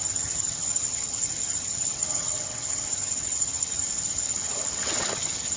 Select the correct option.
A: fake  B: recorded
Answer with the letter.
A